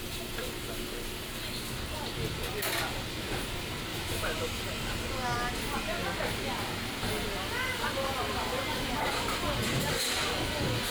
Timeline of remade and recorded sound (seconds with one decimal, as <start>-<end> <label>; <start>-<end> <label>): 0.0-3.9 recorded; 3.9-4.6 remade; 4.6-10.9 recorded